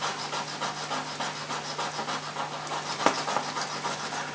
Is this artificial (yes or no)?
no